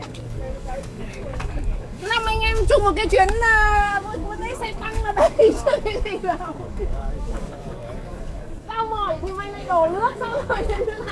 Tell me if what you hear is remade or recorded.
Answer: remade